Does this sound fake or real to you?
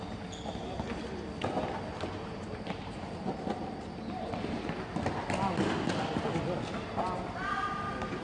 real